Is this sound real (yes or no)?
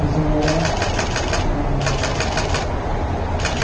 yes